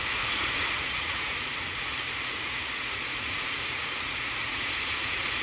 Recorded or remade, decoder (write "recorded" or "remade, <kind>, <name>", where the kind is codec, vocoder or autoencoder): remade, vocoder, Vocos